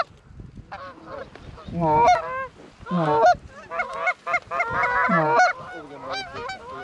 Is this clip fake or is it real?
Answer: real